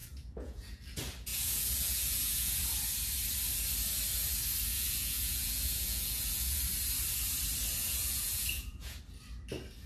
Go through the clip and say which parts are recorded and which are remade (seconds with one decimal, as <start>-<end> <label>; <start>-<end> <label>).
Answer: 0.0-0.8 remade; 0.8-1.3 recorded; 1.3-2.6 remade; 2.6-4.7 recorded; 4.7-6.6 remade; 6.6-7.8 recorded; 7.8-9.0 remade; 9.0-9.9 recorded